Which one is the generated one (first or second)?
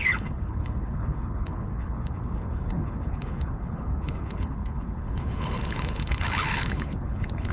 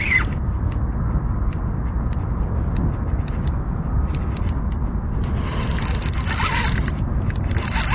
first